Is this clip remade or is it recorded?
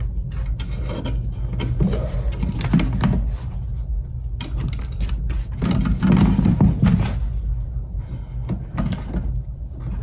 recorded